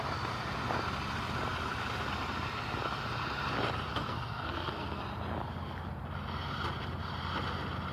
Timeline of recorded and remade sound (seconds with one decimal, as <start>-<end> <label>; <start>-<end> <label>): 0.0-3.9 recorded; 3.9-5.0 remade; 5.0-7.9 recorded